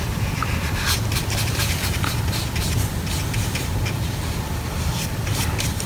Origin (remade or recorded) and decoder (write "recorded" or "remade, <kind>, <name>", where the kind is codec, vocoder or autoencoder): remade, vocoder, BigVGAN v2